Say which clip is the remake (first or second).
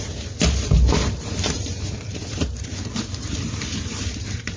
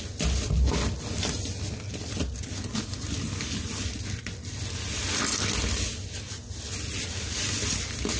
first